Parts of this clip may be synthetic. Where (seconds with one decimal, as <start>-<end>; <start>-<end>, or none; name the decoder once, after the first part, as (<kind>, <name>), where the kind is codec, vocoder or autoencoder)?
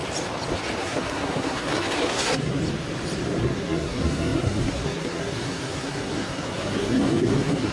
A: 0.8-2.6 (codec, SNAC); 3.4-7.7